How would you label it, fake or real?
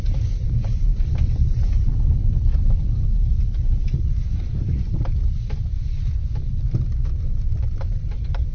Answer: fake